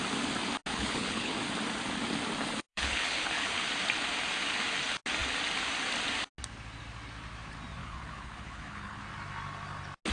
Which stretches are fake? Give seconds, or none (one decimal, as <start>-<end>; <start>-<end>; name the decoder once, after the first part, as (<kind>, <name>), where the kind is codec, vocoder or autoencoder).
0.7-1.3 (codec, HILCodec); 2.7-3.7; 7.8-9.0